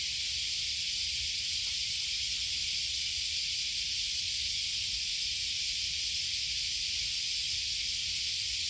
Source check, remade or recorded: recorded